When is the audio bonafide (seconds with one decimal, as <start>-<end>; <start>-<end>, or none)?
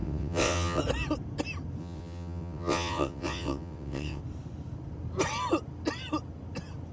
0.8-1.8; 4.2-6.9